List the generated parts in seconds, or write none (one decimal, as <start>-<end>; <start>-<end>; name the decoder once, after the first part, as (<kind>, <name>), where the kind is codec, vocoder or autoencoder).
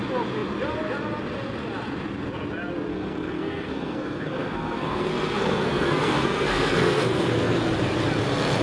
2.9-7.7 (codec, SNAC)